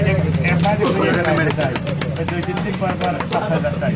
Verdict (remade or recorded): recorded